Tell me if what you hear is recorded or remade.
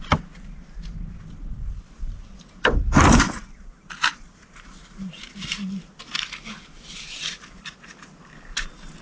recorded